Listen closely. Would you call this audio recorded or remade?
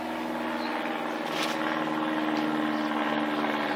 recorded